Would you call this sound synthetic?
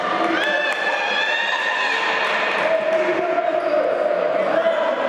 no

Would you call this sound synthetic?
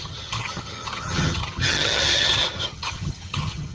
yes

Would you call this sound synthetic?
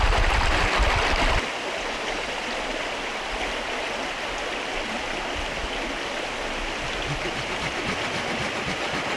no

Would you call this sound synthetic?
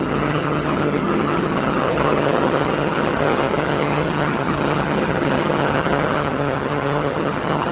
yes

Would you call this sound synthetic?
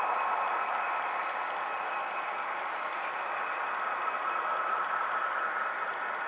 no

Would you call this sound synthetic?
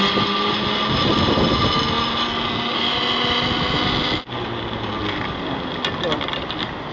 no